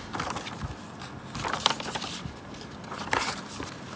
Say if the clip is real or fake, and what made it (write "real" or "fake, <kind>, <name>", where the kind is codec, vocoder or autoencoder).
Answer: real